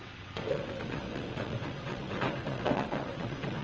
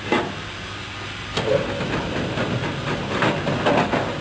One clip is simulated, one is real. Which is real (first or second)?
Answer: second